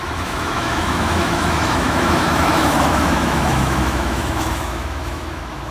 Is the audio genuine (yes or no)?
no